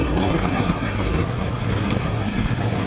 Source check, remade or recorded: remade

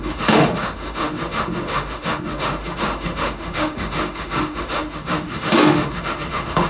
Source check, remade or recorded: remade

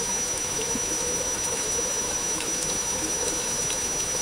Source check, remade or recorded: remade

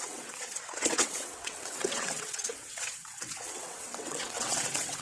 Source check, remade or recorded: remade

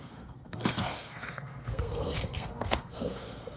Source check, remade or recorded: remade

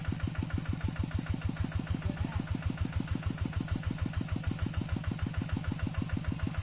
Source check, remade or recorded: recorded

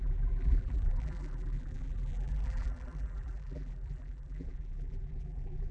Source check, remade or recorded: remade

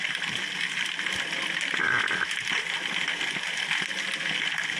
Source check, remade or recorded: recorded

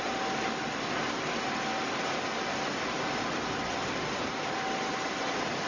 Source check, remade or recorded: recorded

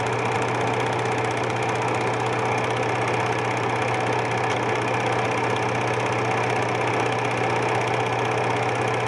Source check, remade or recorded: recorded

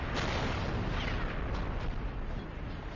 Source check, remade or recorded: recorded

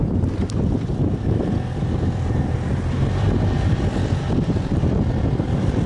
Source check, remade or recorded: remade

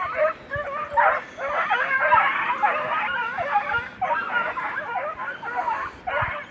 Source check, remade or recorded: recorded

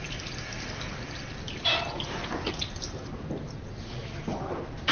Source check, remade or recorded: recorded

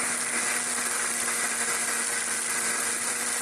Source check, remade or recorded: recorded